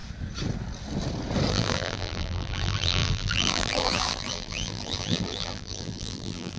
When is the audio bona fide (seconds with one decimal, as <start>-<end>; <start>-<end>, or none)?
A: 0.0-1.5

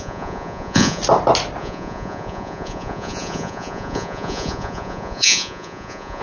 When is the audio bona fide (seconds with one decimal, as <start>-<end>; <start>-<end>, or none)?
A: 1.0-1.6

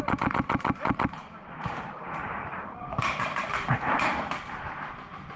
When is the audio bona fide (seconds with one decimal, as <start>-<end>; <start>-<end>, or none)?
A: 0.0-1.2; 4.1-5.4

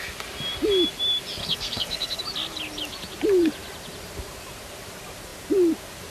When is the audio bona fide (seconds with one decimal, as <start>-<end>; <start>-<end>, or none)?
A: 0.0-1.4; 2.2-6.1

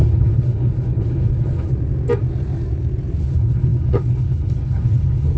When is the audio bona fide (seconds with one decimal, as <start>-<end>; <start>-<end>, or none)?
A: 1.7-3.2

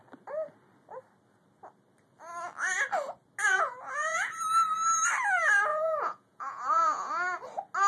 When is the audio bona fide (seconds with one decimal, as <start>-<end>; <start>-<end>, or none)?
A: 0.0-3.4; 4.3-5.7; 7.1-7.9

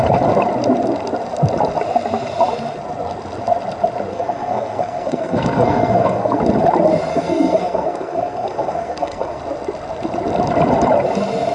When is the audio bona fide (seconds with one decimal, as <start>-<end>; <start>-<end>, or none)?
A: 0.0-4.1; 6.4-7.1; 9.4-11.5

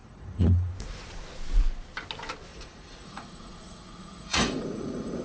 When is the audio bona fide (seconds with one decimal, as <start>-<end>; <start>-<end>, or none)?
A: 0.7-2.5